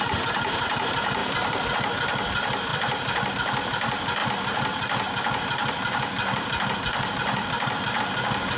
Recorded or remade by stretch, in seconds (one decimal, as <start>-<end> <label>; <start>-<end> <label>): 0.0-1.2 recorded; 1.2-1.7 remade; 1.7-2.7 recorded; 2.7-3.3 remade; 3.3-8.6 recorded